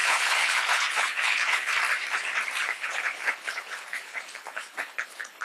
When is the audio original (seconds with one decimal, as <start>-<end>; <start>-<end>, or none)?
1.7-2.6